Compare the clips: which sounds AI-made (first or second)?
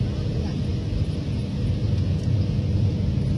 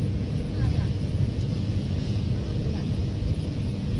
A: second